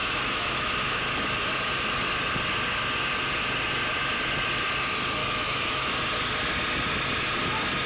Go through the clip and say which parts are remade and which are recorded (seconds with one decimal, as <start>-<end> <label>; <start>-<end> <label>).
0.0-1.0 remade; 1.0-5.2 recorded; 5.2-5.9 remade; 5.9-7.9 recorded